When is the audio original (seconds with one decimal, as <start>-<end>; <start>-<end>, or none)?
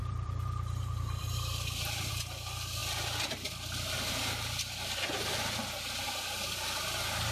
2.1-7.3